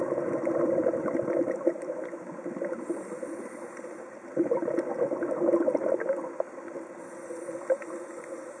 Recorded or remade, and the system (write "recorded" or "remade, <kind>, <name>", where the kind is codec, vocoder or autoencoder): recorded